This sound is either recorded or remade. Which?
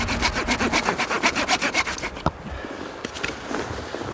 recorded